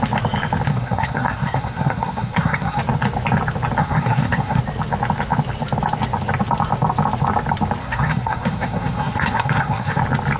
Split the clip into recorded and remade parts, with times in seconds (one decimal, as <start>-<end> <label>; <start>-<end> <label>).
0.0-0.7 recorded; 0.7-2.8 remade; 2.8-3.8 recorded; 3.8-4.6 remade; 4.6-7.8 recorded; 7.8-10.0 remade; 10.0-10.4 recorded